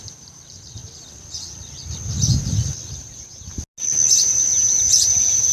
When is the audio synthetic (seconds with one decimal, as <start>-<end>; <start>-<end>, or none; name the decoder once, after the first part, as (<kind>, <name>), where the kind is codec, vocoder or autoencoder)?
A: 0.0-0.8 (vocoder, BigVGAN v2); 3.0-3.5; 4.1-5.5